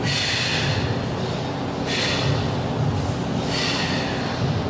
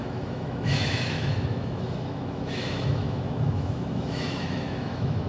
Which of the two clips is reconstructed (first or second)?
second